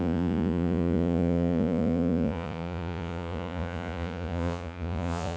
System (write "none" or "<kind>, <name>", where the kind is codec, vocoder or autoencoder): vocoder, Vocos